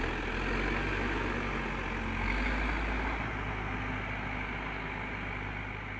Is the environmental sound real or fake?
real